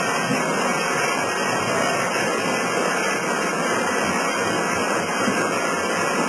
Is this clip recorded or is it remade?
recorded